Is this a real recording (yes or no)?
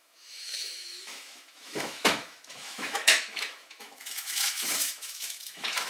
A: no